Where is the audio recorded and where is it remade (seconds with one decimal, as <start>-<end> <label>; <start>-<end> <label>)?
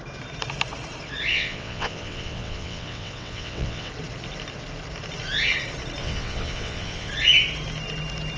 0.0-1.3 recorded; 1.3-3.9 remade; 3.9-6.0 recorded; 6.0-7.1 remade; 7.1-8.4 recorded